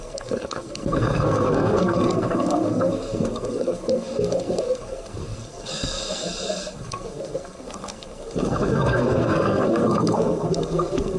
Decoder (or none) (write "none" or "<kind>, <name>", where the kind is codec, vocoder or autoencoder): codec, SNAC